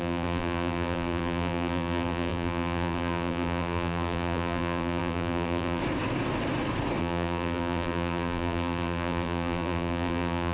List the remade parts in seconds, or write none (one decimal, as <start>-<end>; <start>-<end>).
0.0-5.8; 7.0-10.5